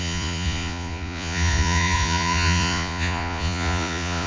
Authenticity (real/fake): fake